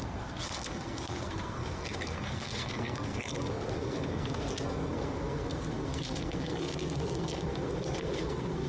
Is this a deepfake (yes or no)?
yes